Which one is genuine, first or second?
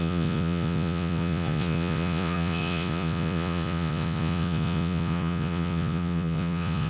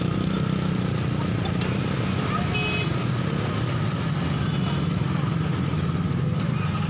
second